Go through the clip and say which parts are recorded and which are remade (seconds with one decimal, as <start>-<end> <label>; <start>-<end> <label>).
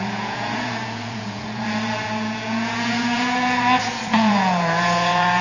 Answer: 0.0-5.4 remade